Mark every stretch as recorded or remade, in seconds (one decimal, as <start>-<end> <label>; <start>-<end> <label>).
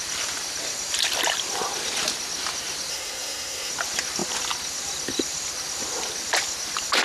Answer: 0.0-2.9 recorded; 2.9-3.7 remade; 3.7-7.0 recorded